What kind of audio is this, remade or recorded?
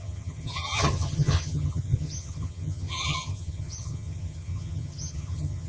remade